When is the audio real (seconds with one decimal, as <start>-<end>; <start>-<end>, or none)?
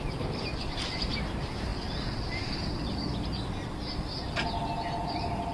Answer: 1.7-5.0